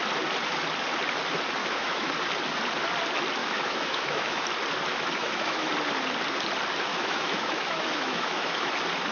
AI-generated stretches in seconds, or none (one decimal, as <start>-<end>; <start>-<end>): 1.6-2.1; 3.4-4.4; 4.9-5.7; 6.9-8.7